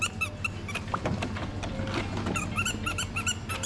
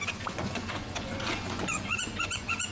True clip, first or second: first